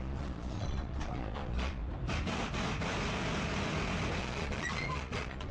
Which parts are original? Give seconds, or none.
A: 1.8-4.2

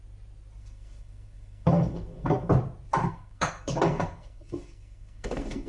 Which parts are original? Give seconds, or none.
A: 0.0-0.6; 2.5-3.0

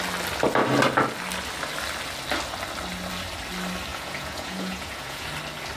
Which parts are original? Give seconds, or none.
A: 0.0-3.9; 5.3-5.8